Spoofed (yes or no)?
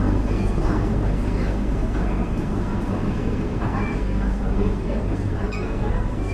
yes